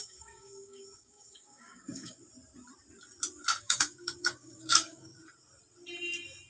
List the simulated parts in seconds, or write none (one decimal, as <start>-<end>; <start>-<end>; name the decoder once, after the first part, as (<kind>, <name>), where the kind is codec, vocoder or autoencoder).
0.0-2.2 (codec, DAC); 3.6-5.2